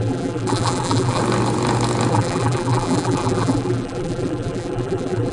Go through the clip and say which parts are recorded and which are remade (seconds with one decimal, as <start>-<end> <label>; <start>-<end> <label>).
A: 0.0-1.2 remade; 1.2-2.1 recorded; 2.1-5.3 remade